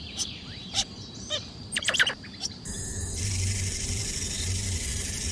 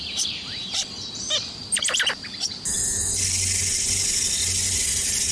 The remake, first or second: first